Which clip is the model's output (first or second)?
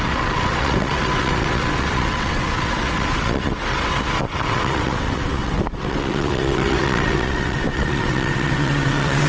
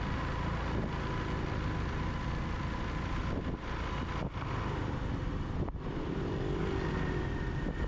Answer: first